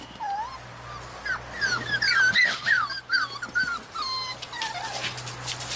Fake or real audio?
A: real